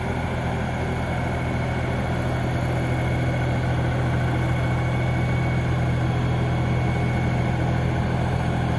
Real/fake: real